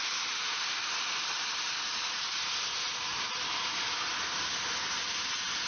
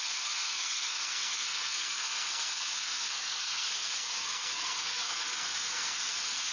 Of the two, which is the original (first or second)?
first